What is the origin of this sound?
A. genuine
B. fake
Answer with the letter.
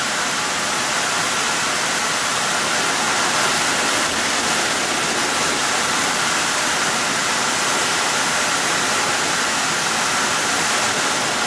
A